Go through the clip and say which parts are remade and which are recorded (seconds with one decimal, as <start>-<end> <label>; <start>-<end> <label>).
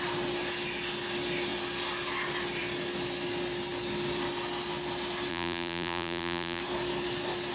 0.0-5.3 recorded; 5.3-6.6 remade; 6.6-7.5 recorded